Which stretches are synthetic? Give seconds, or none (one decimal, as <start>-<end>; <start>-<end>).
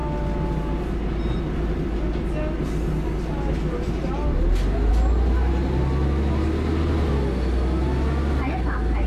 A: none